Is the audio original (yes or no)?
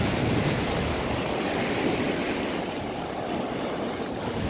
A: yes